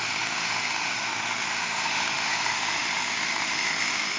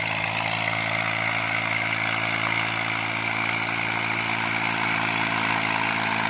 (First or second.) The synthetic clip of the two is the first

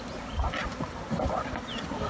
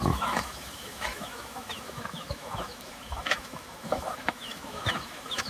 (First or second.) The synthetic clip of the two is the second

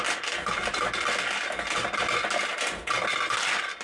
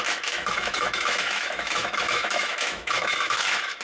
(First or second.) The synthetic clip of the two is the second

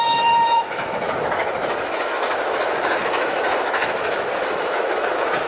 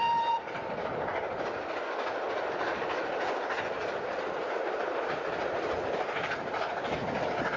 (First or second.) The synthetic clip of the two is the first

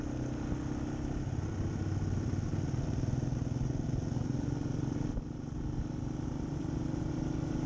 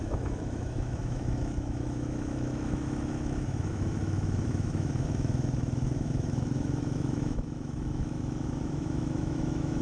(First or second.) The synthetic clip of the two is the second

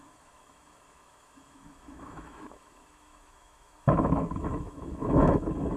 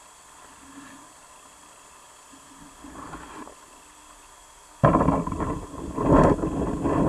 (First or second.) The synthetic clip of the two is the first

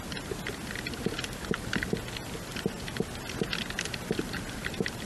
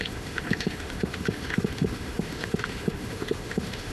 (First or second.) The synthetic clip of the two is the second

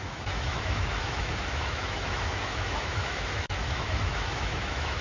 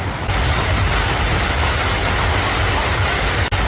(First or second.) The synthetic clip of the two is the first